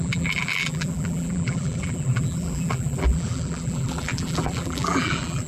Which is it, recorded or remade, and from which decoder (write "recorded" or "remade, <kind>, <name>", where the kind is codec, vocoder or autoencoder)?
remade, vocoder, BigVGAN v2